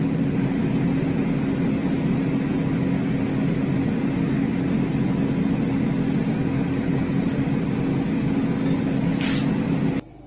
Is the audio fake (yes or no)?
no